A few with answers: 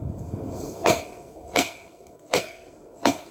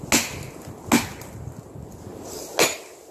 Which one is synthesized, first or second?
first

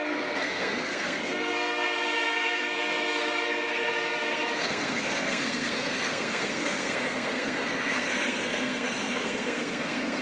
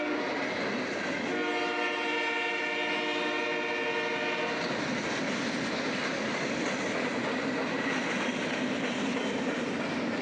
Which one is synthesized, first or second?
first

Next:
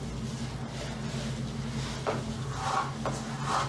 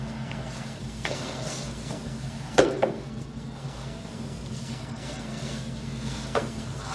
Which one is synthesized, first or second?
second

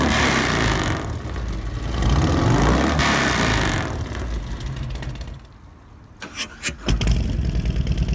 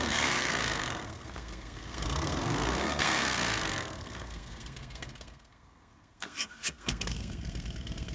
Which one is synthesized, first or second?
second